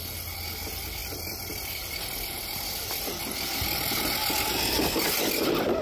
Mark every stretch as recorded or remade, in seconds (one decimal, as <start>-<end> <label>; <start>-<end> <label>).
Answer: 0.0-1.0 recorded; 1.0-3.2 remade; 3.2-5.8 recorded